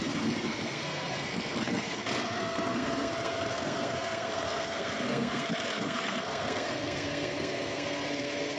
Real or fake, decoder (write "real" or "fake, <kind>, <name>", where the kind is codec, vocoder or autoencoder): fake, codec, SNAC